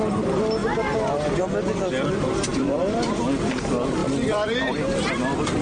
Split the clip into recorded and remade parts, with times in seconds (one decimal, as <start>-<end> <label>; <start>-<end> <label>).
0.0-2.5 recorded; 2.5-3.3 remade; 3.3-4.0 recorded; 4.0-5.1 remade; 5.1-5.6 recorded